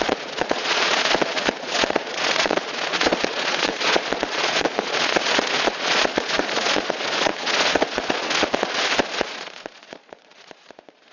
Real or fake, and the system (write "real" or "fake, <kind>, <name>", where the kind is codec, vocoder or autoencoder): fake, vocoder, Vocos